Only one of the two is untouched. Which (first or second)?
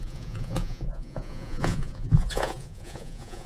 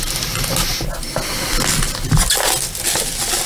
second